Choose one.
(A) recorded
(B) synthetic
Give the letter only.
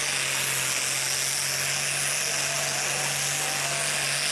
A